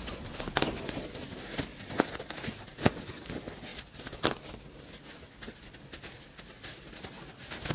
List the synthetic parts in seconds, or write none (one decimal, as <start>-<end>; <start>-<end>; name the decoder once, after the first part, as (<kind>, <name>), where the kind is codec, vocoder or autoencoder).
none